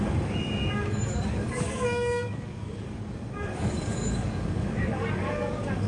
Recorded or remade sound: remade